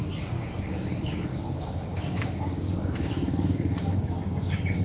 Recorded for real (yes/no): no